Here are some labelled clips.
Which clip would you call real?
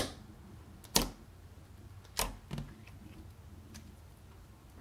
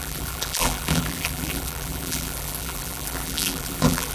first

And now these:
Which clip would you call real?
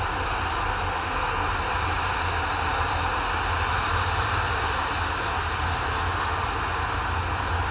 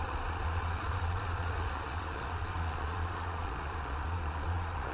first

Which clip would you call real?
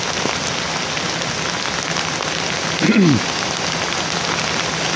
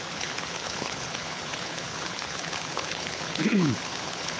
first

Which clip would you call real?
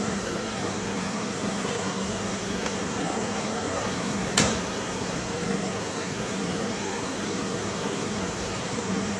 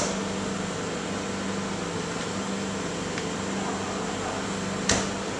second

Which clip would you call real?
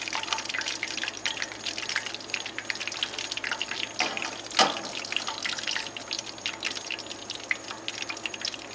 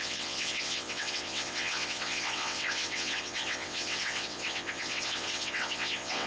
first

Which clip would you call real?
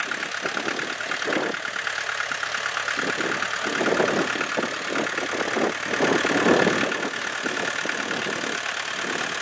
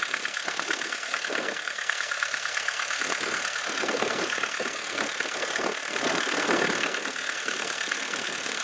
first